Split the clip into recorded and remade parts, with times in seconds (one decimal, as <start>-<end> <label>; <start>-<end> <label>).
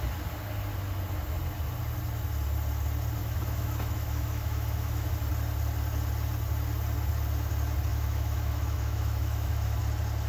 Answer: 0.0-3.2 recorded; 3.2-5.1 remade; 5.1-7.9 recorded; 7.9-9.8 remade; 9.8-10.3 recorded